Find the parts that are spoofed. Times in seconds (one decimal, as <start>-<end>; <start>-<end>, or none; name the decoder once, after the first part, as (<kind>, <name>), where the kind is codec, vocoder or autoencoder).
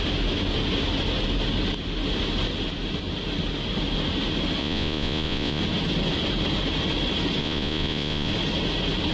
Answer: 4.6-5.6 (vocoder, Vocos); 7.4-8.3